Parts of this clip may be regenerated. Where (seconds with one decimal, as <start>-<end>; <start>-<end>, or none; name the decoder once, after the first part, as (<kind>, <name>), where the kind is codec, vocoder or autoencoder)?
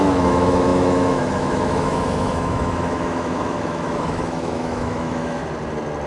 0.0-5.4 (autoencoder, DAC-VAE)